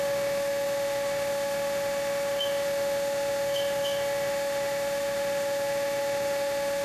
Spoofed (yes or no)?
yes